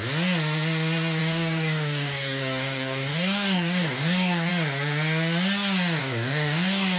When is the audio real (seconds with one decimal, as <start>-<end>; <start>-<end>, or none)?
0.0-1.2; 4.5-6.0